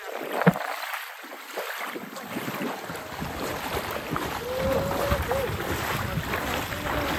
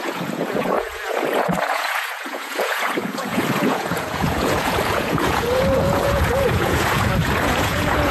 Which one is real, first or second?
first